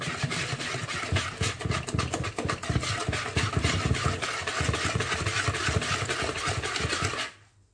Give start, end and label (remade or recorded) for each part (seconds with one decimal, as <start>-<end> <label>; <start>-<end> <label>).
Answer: 0.0-7.7 recorded